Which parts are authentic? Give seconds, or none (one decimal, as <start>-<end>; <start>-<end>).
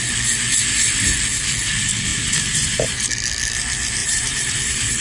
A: 0.0-2.1; 3.1-4.0